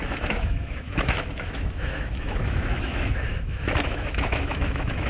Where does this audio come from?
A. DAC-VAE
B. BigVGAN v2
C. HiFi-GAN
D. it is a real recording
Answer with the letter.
A